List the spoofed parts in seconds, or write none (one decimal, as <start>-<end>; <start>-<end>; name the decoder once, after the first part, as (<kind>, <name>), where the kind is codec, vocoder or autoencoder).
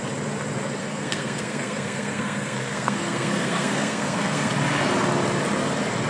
0.8-4.5 (codec, SNAC)